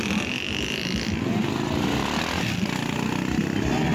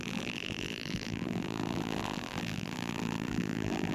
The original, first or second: first